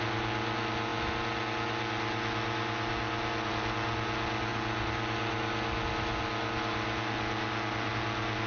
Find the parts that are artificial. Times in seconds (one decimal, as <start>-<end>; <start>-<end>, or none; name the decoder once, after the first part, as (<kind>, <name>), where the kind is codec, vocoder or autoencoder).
none